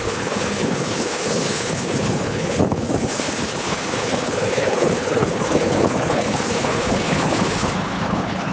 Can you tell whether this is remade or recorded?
remade